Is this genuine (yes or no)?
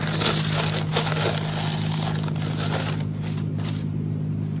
yes